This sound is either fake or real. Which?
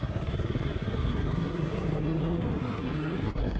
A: fake